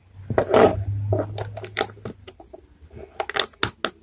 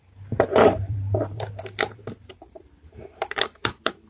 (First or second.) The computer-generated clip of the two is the second